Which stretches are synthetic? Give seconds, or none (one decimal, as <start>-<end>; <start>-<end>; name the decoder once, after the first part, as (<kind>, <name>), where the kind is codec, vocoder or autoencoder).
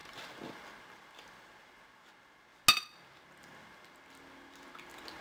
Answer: none